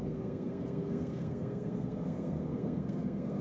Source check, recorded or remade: remade